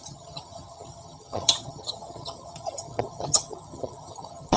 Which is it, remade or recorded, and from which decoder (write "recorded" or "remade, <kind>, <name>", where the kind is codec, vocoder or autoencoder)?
remade, vocoder, HiFi-GAN